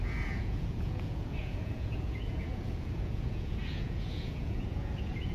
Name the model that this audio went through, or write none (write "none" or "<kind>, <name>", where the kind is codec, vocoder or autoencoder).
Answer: vocoder, Vocos